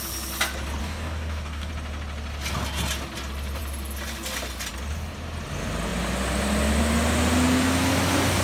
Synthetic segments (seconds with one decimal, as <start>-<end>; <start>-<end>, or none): 0.8-1.7